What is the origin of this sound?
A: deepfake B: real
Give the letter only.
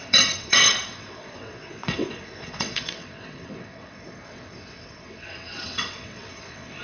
A